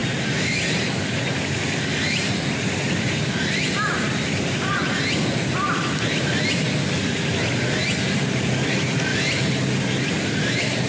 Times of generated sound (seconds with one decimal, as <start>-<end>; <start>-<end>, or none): none